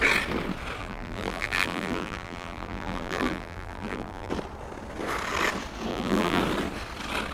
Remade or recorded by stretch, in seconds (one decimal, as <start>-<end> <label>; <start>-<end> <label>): 0.0-0.8 recorded; 0.8-4.3 remade; 4.3-5.9 recorded; 5.9-6.4 remade; 6.4-7.3 recorded